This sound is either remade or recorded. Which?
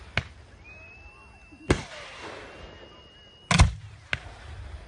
recorded